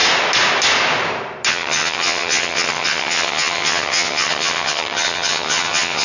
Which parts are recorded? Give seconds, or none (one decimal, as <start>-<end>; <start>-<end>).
0.0-1.5